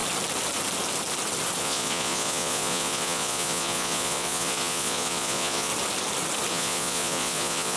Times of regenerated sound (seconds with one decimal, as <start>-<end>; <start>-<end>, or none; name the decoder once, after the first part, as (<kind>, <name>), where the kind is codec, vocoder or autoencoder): 1.6-5.7 (vocoder, Vocos); 6.5-7.8